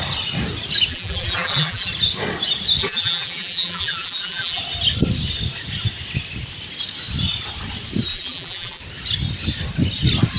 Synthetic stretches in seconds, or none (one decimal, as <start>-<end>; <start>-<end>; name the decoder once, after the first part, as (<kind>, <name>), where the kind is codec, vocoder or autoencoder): 0.9-1.9 (vocoder, BigVGAN v2); 2.8-4.6; 8.1-8.8